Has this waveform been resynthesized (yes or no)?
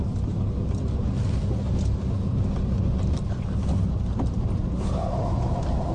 no